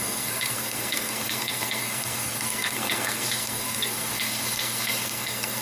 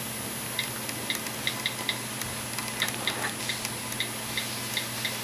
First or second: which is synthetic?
first